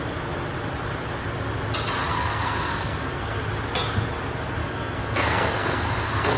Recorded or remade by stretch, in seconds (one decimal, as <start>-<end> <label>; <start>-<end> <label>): 0.0-2.1 recorded; 2.1-3.4 remade; 3.4-4.6 recorded; 4.6-6.4 remade